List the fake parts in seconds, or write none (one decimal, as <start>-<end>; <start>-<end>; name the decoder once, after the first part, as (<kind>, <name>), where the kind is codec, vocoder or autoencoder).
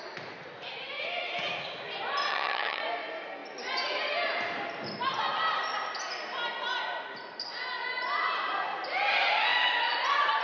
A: 2.3-2.8 (vocoder, HiFi-GAN)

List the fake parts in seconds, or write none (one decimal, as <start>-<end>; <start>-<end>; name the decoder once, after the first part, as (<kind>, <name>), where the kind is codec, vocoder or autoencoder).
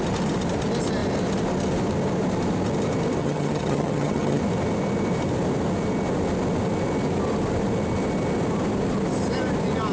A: 3.2-4.4 (vocoder, HiFi-GAN)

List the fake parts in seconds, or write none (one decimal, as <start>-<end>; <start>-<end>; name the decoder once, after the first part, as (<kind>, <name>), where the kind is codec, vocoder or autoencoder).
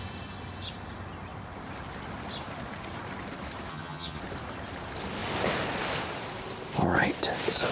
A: 3.7-4.2 (vocoder, HiFi-GAN)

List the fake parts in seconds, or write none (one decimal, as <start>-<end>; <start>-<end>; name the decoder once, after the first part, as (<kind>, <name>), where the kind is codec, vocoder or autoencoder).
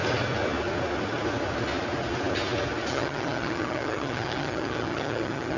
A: 2.9-5.6 (vocoder, HiFi-GAN)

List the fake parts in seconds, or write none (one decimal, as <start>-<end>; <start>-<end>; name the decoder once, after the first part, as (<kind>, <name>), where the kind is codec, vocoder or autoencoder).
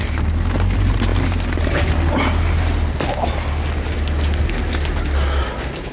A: none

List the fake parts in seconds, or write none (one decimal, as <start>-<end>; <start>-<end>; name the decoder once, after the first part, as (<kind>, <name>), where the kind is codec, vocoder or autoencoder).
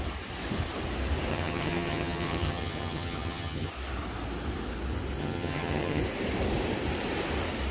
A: 1.3-3.7 (vocoder, HiFi-GAN); 5.2-6.0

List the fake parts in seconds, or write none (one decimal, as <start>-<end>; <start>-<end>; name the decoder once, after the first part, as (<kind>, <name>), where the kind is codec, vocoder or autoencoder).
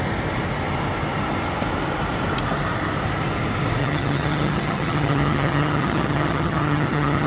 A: 3.8-7.3 (vocoder, HiFi-GAN)